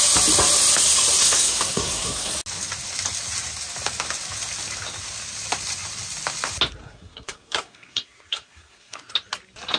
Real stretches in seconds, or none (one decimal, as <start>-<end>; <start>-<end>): 0.0-1.2; 2.3-6.8; 9.1-9.8